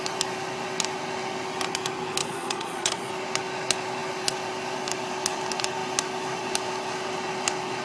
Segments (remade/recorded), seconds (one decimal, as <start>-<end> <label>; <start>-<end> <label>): 0.0-2.2 recorded; 2.2-3.1 remade; 3.1-7.8 recorded